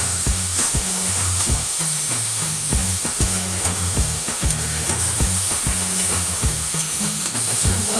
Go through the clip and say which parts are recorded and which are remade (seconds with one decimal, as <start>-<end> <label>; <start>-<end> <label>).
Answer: 0.0-8.0 remade